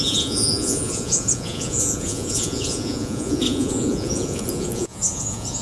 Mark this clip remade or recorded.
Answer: remade